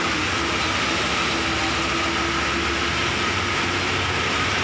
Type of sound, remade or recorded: recorded